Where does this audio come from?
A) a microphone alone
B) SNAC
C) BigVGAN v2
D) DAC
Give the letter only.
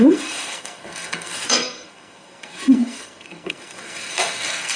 B